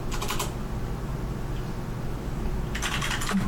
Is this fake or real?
real